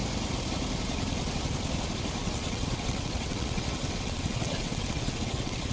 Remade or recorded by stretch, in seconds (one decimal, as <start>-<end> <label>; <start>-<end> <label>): 0.0-2.2 recorded; 2.2-5.7 remade